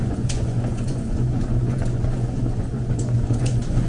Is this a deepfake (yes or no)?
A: yes